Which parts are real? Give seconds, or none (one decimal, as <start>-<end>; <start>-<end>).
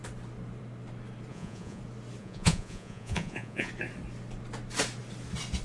0.0-1.3; 1.8-2.2; 3.7-5.6